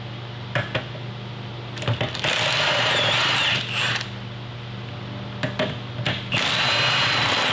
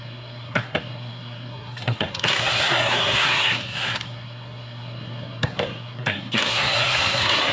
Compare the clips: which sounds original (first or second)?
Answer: first